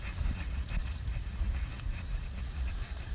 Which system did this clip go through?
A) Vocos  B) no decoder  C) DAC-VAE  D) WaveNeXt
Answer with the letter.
A